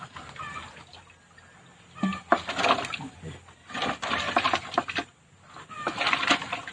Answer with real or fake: real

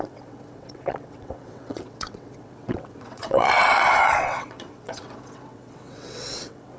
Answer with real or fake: fake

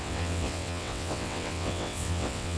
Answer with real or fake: fake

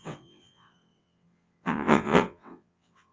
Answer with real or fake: fake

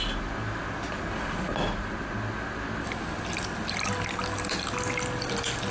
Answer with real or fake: real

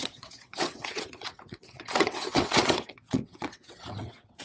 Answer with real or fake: fake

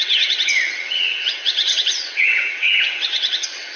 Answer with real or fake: fake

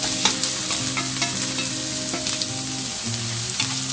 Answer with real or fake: real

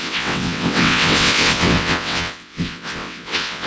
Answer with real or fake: fake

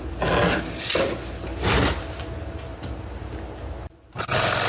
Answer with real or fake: real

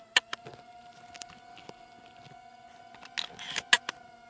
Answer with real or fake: real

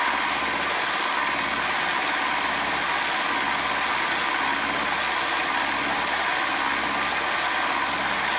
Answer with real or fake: real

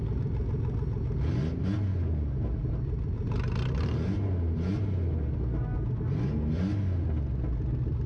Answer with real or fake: real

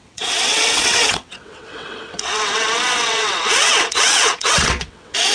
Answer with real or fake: fake